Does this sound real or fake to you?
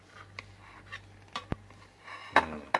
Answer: real